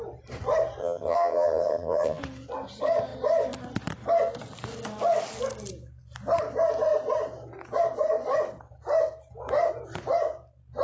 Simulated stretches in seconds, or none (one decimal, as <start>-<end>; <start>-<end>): 0.8-2.2

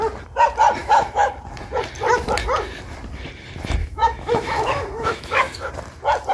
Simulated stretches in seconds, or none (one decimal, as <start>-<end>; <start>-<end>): 0.8-1.3; 3.8-5.7

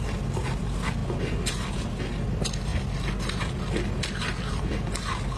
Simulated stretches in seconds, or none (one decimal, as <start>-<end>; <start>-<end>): none

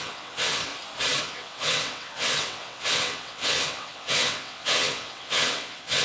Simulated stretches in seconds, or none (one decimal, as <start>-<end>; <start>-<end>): 0.0-0.7; 1.2-6.0

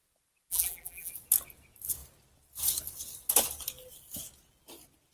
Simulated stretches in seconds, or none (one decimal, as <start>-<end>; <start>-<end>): 0.5-1.1

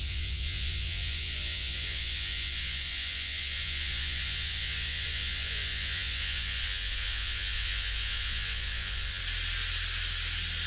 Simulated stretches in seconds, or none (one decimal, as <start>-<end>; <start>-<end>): 0.0-9.2